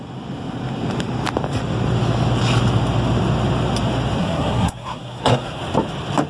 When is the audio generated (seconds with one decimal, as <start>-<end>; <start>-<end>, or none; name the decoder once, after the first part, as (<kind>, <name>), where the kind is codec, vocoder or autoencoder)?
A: 4.2-5.6 (codec, SNAC)